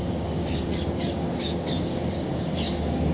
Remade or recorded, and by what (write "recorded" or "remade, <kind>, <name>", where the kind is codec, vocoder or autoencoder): remade, codec, DAC